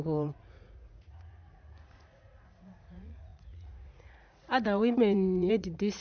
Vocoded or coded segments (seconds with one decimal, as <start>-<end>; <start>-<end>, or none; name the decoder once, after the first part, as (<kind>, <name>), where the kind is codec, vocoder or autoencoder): 0.0-6.0 (vocoder, Vocos)